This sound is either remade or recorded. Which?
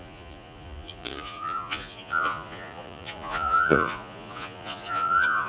remade